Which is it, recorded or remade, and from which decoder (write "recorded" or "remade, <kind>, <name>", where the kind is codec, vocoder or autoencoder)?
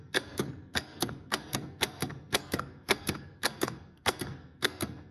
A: remade, codec, SNAC